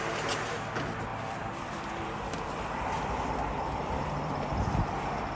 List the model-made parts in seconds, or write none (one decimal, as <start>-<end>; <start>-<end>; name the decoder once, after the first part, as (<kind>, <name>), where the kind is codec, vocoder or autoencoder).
1.1-4.3 (vocoder, BigVGAN v2)